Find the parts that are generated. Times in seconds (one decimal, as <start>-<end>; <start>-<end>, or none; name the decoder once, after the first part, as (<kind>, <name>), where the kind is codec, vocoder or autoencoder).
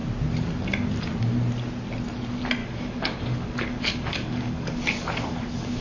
2.6-5.8 (codec, DAC)